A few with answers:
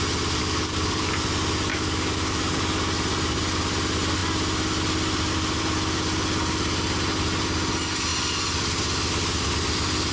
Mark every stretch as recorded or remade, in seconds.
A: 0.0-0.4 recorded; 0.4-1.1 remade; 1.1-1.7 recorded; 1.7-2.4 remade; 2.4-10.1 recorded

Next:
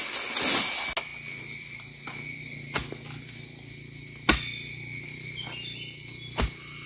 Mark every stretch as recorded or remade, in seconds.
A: 0.0-6.9 recorded

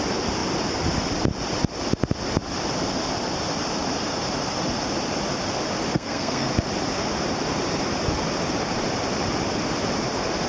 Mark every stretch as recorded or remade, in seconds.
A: 0.0-5.9 recorded; 5.9-6.5 remade; 6.5-10.5 recorded

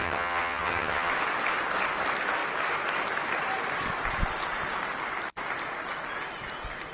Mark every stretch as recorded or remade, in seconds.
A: 0.0-1.1 remade; 1.1-6.9 recorded

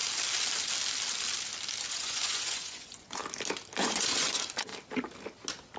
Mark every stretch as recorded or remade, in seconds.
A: 0.0-1.9 recorded; 1.9-3.2 remade; 3.2-3.8 recorded; 3.8-4.7 remade; 4.7-5.8 recorded